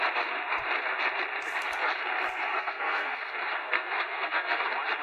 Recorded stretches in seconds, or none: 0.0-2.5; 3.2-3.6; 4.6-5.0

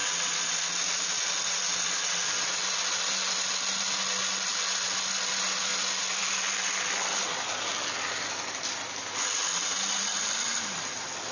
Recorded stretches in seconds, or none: 0.0-11.3

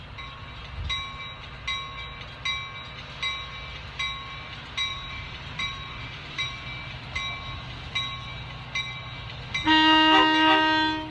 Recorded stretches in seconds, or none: 0.0-4.9; 6.5-11.1